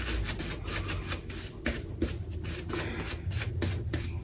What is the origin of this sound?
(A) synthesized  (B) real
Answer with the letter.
B